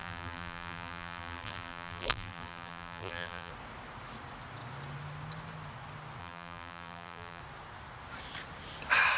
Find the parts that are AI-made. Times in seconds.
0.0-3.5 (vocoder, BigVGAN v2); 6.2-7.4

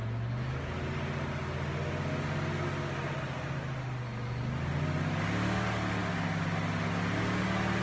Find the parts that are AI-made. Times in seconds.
none

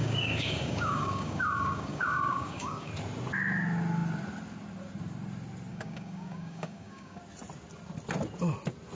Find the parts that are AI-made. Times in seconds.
0.0-2.9 (codec, DAC); 5.7-7.2

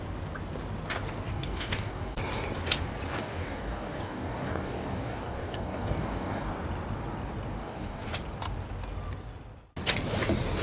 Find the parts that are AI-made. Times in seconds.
1.3-2.2 (codec, DAC); 3.1-6.5; 7.6-8.1

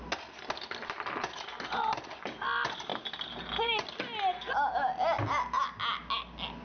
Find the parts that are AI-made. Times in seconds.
none